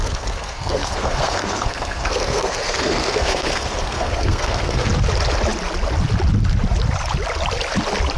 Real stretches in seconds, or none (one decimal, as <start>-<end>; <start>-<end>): 4.9-8.2